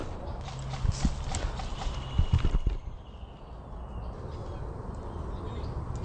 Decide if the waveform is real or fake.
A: real